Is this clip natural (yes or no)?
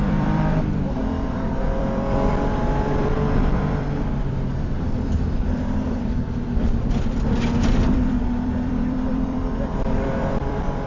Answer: no